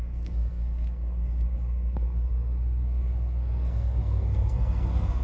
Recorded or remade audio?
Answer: remade